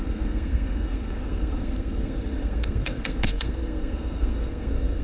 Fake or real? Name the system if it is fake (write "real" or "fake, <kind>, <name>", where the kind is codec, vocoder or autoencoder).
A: fake, codec, SNAC